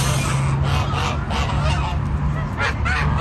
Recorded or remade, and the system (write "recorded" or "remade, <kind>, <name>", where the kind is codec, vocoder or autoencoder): recorded